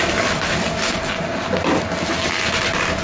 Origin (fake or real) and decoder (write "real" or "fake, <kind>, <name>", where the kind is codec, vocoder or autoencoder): real